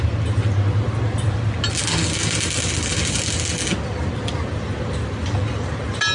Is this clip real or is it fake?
real